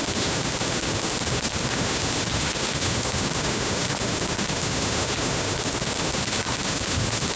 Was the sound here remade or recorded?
remade